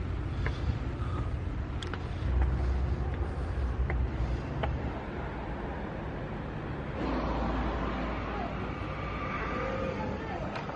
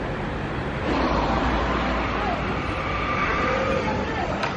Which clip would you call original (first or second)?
first